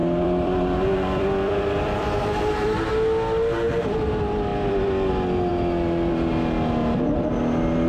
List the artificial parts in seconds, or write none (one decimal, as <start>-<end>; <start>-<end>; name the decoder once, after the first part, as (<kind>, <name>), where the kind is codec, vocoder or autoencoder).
0.0-2.9 (vocoder, BigVGAN v2)